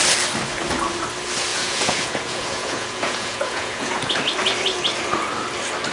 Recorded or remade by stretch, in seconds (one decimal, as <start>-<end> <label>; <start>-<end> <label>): 0.0-1.5 recorded; 1.5-4.1 remade; 4.1-5.9 recorded